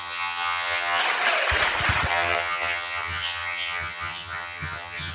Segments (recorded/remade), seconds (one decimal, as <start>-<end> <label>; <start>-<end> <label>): 0.0-1.0 remade; 1.0-2.1 recorded; 2.1-5.1 remade